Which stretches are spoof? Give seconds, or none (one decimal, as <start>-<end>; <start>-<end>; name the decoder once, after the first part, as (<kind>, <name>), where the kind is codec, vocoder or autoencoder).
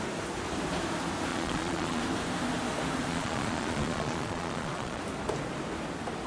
1.3-2.0 (vocoder, Vocos); 3.1-5.0